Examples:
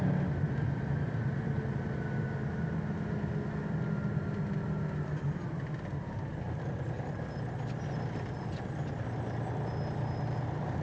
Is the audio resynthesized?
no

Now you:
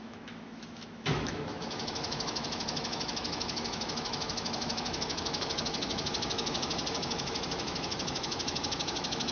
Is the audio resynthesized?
yes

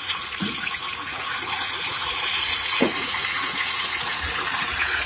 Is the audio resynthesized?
yes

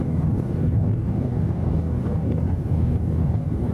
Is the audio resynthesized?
yes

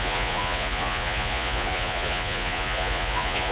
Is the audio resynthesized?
yes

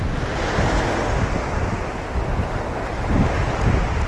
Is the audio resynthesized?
no